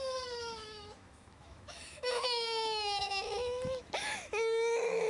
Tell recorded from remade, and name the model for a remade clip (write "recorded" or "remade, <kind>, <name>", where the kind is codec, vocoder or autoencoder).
remade, autoencoder, DAC-VAE